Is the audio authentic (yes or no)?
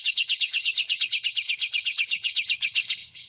no